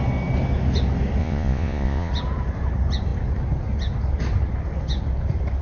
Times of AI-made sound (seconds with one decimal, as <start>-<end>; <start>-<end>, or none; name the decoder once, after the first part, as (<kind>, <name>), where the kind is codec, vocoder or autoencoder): 1.2-2.1 (vocoder, Vocos)